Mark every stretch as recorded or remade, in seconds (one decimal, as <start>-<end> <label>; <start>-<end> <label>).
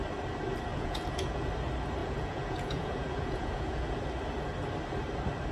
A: 0.0-0.7 recorded; 0.7-1.5 remade; 1.5-2.0 recorded; 2.0-4.0 remade; 4.0-5.5 recorded